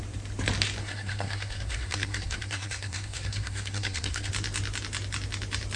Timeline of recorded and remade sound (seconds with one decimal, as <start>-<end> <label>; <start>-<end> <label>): 0.0-0.8 recorded; 0.8-4.3 remade; 4.3-5.8 recorded